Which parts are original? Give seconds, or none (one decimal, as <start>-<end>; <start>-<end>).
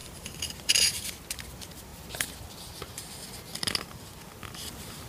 1.1-5.1